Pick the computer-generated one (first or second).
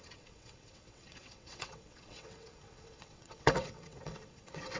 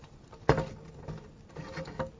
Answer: first